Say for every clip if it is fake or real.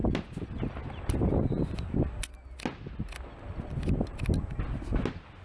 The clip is real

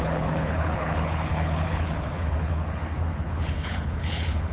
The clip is fake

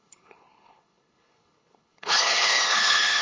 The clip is fake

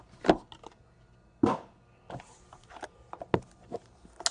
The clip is real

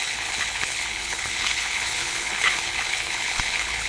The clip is fake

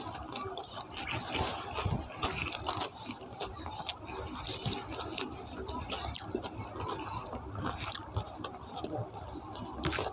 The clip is real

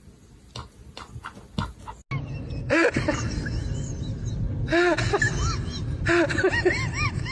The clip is real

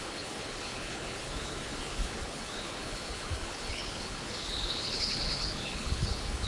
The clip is fake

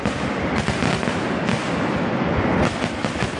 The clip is real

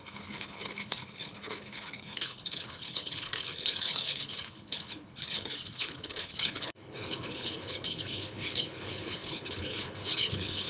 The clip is fake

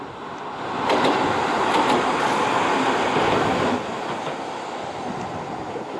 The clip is real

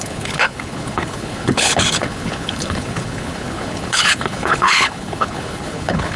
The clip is fake